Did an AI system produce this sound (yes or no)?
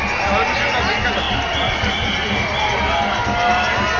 no